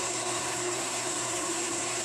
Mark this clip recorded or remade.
remade